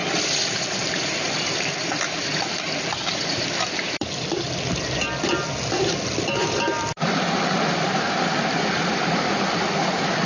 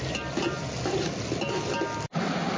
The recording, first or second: second